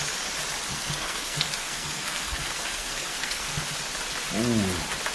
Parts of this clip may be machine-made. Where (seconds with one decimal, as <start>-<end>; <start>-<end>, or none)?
0.7-3.6